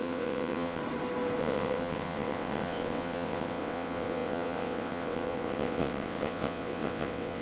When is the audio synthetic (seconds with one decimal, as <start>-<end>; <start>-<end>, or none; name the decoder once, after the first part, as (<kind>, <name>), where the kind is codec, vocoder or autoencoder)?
0.0-0.8 (vocoder, WaveNeXt); 1.4-7.4